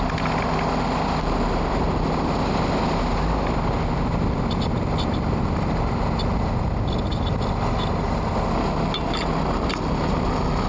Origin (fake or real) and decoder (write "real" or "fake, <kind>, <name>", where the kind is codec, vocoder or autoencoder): real